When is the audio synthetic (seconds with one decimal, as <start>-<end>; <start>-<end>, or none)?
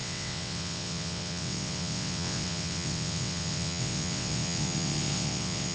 0.0-5.7